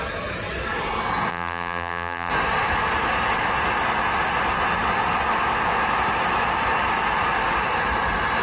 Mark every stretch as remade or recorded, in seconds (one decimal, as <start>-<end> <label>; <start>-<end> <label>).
0.0-1.3 recorded; 1.3-2.3 remade; 2.3-8.4 recorded